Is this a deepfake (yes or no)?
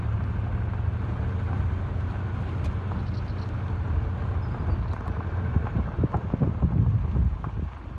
no